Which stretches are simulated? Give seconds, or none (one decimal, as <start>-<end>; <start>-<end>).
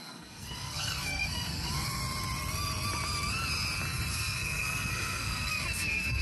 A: 0.0-2.0; 4.1-6.2